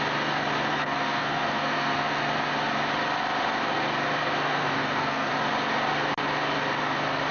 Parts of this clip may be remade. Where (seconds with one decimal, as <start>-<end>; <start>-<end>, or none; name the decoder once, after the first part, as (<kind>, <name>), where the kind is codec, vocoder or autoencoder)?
0.7-2.2 (codec, SNAC); 4.2-5.3